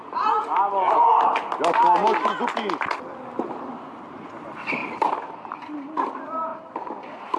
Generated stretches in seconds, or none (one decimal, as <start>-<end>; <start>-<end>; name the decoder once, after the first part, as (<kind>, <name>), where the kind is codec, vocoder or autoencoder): 4.8-6.1 (vocoder, BigVGAN v2)